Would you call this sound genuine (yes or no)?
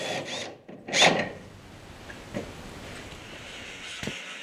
yes